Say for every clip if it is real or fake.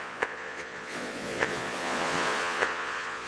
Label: fake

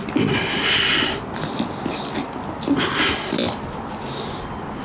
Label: real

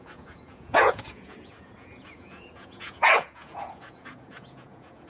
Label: fake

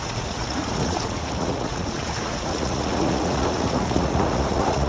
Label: fake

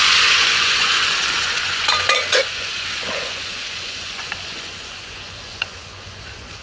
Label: fake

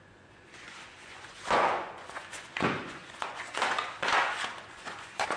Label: fake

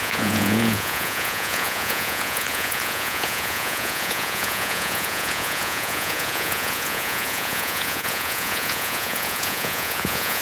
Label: fake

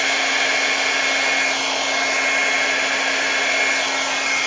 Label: real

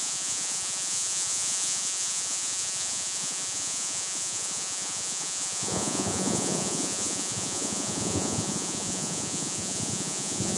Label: fake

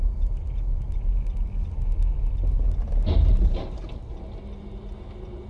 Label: real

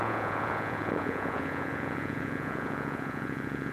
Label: fake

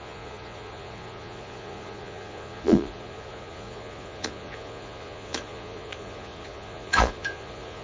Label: fake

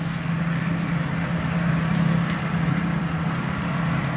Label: real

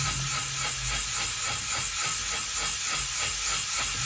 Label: real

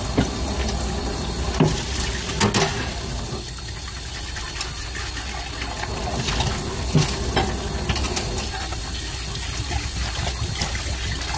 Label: real